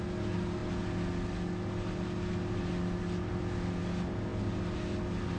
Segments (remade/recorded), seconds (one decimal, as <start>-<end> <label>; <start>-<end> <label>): 0.0-5.4 recorded